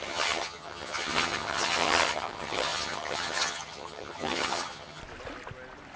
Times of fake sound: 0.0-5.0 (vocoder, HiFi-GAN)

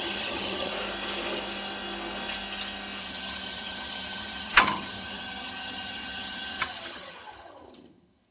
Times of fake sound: 0.0-0.7 (vocoder, HiFi-GAN); 3.0-8.3

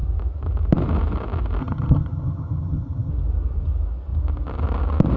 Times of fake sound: 1.6-3.1 (vocoder, HiFi-GAN)

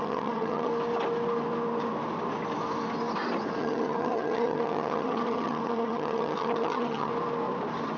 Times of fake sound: 0.0-0.7 (vocoder, HiFi-GAN); 3.6-7.1